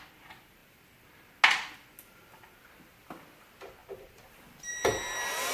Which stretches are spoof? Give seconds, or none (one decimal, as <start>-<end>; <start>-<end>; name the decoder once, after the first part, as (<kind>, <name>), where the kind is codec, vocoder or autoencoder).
none